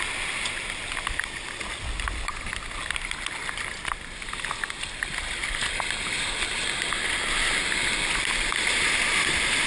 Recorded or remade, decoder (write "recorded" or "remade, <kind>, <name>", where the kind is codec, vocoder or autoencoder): recorded